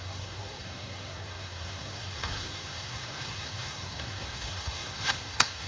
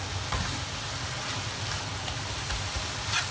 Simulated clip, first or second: first